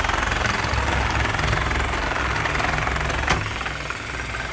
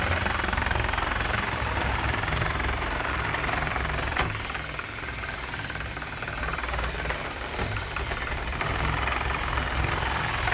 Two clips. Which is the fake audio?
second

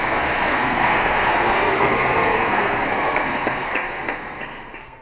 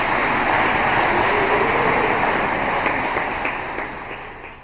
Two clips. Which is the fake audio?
first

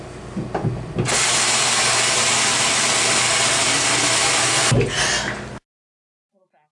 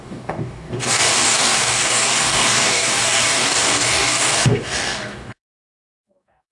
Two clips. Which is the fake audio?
second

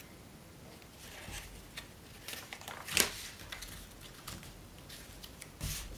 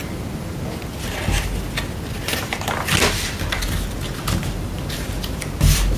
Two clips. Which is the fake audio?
first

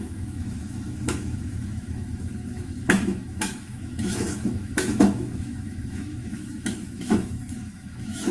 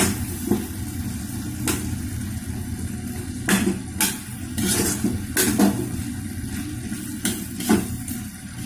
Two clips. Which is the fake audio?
first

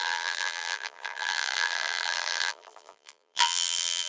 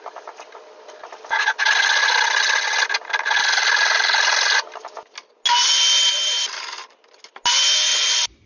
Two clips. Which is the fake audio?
first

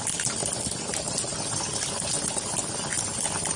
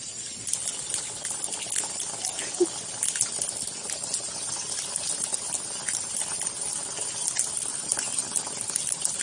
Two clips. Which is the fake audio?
first